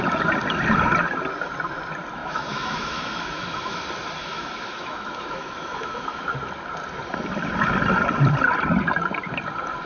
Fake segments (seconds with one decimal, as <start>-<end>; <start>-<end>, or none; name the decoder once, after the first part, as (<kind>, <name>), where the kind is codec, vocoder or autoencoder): 2.2-3.8 (autoencoder, DAC-VAE); 4.2-6.2